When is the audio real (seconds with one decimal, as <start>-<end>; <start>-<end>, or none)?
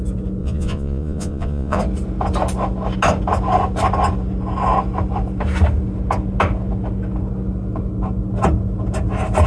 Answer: 0.0-0.4; 1.8-9.5